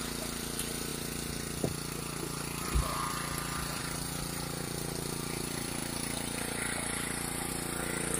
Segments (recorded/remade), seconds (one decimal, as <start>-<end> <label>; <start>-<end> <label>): 0.0-5.8 remade; 5.8-7.5 recorded; 7.5-8.2 remade